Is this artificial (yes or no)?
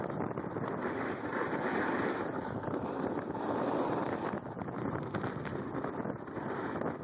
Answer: no